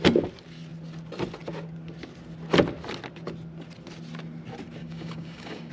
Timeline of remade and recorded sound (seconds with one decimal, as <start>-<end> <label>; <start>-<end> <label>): 0.0-4.8 recorded; 4.8-5.7 remade